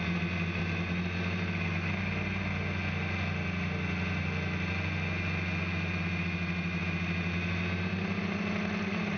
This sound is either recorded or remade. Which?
recorded